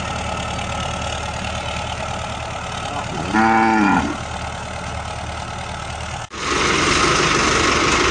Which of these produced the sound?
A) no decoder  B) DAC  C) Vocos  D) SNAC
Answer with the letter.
A